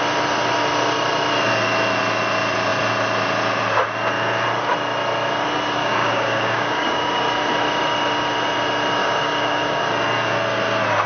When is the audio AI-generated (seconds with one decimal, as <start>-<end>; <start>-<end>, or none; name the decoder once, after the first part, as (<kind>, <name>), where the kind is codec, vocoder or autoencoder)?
5.8-7.2 (codec, DAC); 9.0-9.8

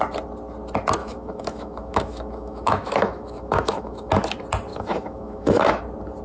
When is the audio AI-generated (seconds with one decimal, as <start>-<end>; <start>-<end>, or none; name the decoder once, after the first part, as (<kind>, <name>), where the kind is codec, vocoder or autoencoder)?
1.0-4.1 (autoencoder, DAC-VAE); 4.7-5.8

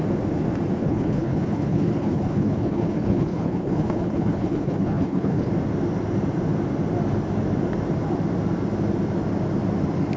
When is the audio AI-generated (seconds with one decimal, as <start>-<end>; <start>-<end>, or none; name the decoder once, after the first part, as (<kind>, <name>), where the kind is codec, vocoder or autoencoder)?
0.8-5.5 (codec, HILCodec)